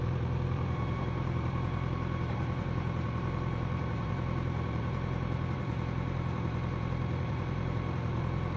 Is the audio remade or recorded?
remade